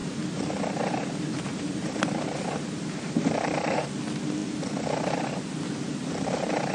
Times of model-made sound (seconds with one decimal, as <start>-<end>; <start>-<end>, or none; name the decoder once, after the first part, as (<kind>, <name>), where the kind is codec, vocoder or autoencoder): 0.0-4.0 (vocoder, BigVGAN v2)